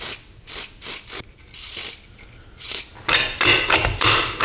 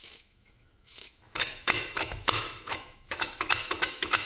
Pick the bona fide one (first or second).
first